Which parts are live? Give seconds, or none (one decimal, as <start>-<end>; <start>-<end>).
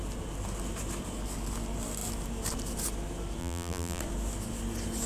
0.0-3.4; 4.0-5.1